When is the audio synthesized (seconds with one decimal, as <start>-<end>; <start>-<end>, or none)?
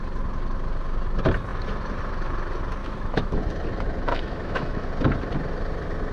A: 2.8-3.4; 4.1-4.9